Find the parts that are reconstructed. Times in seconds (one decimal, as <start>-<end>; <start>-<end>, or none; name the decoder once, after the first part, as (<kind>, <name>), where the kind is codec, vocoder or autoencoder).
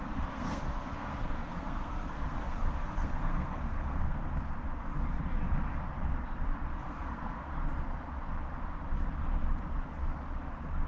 0.0-4.2 (codec, SNAC); 6.8-7.5